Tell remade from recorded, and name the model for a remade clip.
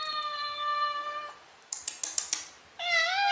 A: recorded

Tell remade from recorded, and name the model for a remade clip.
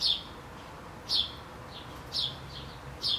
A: recorded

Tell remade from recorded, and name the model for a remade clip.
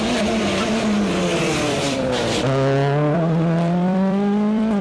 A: remade, vocoder, BigVGAN v2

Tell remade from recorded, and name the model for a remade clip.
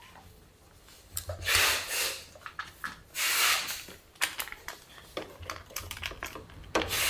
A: recorded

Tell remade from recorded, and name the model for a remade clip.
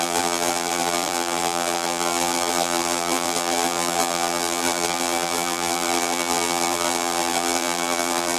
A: remade, vocoder, BigVGAN v2